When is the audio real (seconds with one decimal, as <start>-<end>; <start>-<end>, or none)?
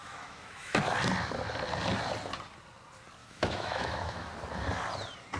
0.8-3.2; 4.3-5.4